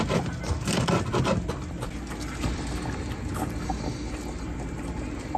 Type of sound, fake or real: real